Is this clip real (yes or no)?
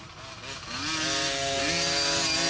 yes